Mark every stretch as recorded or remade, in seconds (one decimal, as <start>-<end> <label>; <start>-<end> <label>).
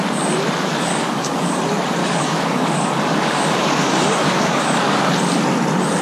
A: 0.0-0.9 recorded; 0.9-1.5 remade; 1.5-2.0 recorded; 2.0-5.1 remade; 5.1-6.0 recorded